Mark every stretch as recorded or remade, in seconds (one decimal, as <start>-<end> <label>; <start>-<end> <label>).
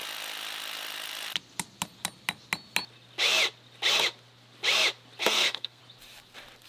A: 0.0-5.2 recorded; 5.2-5.8 remade; 5.8-6.7 recorded